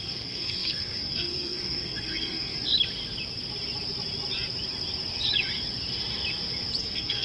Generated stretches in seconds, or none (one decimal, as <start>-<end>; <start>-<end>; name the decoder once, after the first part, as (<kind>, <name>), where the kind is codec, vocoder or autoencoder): 0.0-2.5 (codec, SNAC); 6.8-7.2